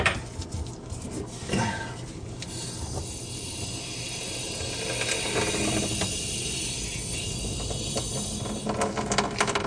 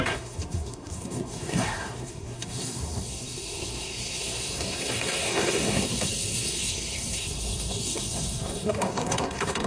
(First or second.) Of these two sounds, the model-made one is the second